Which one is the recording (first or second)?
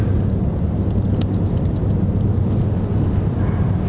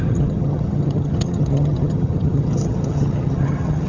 first